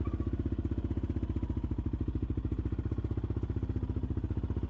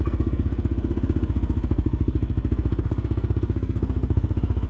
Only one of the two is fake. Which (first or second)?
second